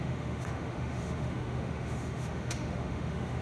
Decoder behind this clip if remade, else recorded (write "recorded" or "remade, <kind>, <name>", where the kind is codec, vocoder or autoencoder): remade, autoencoder, DAC-VAE